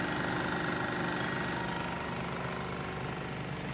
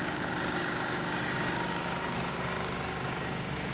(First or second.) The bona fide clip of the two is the first